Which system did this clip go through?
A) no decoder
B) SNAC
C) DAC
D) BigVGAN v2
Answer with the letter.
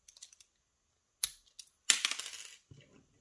A